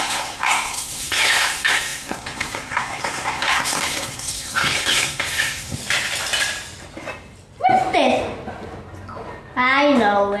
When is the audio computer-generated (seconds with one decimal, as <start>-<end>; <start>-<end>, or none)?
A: 0.0-5.8